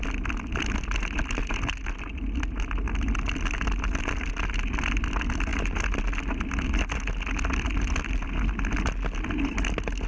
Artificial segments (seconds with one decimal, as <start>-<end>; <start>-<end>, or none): none